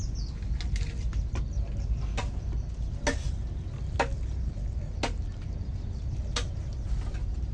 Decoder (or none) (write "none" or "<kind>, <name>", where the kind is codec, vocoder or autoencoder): none